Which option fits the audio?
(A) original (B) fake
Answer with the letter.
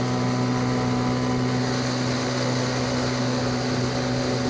A